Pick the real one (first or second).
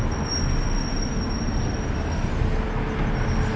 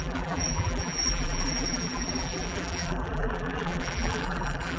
first